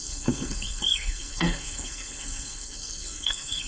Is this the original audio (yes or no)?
no